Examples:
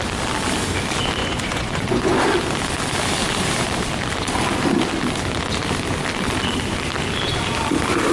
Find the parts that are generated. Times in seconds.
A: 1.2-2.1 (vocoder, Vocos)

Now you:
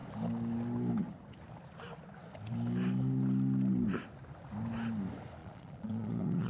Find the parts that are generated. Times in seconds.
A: 5.4-6.5 (vocoder, Vocos)